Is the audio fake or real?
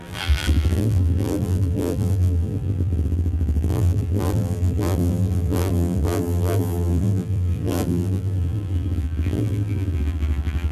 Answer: fake